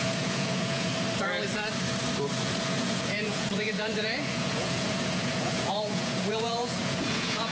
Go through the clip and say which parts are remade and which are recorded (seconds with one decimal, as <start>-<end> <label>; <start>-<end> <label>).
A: 0.0-0.9 remade; 0.9-2.4 recorded; 2.4-7.5 remade